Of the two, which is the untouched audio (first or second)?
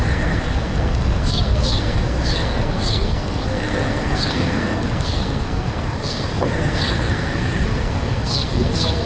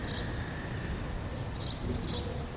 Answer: second